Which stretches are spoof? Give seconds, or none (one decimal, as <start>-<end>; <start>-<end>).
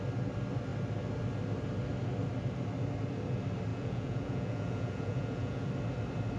3.7-5.7